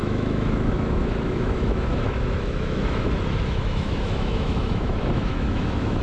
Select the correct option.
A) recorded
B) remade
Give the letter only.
B